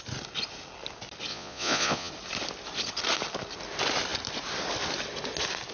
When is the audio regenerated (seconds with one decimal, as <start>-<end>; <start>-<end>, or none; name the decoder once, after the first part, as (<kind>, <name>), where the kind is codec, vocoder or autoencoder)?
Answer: 1.3-2.1 (vocoder, Vocos)